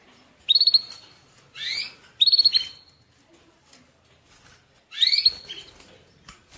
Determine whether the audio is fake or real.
real